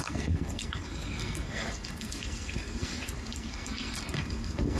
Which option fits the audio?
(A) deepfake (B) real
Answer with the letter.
A